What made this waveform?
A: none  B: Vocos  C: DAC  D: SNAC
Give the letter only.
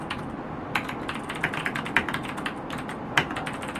A